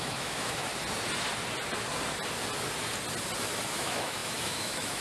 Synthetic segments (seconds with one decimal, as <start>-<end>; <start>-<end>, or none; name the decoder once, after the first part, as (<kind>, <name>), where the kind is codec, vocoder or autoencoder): 0.0-0.7 (autoencoder, DAC-VAE); 3.7-5.0